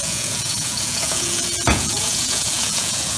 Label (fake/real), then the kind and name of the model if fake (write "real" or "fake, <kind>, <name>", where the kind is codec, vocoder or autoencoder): fake, vocoder, Vocos